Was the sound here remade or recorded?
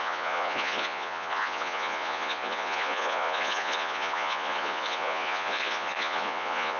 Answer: remade